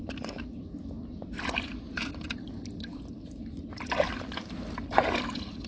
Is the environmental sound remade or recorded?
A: recorded